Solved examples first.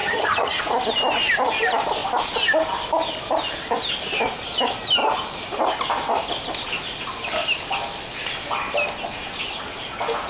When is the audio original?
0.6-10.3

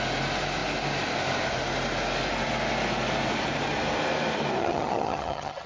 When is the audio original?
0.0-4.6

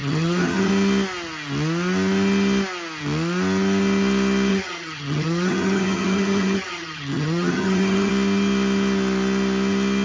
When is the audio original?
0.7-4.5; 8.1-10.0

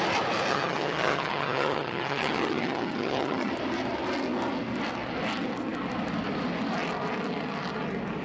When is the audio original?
0.0-0.5; 3.5-8.2

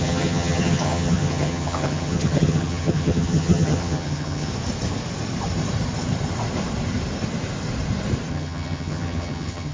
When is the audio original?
4.5-8.3

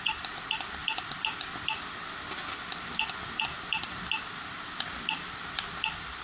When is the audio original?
0.0-6.2